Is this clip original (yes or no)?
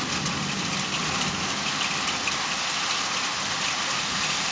yes